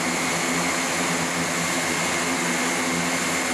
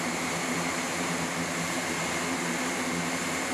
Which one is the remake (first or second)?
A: second